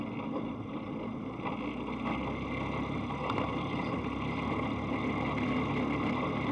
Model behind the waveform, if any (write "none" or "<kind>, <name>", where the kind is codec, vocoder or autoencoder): none